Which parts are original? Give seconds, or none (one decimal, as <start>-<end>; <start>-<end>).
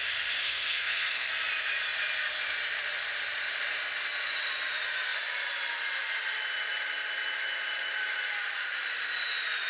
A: 0.0-0.4; 1.3-9.7